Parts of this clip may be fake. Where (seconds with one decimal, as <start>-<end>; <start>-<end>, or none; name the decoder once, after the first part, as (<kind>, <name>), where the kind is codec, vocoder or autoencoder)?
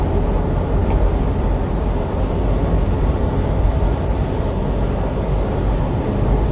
none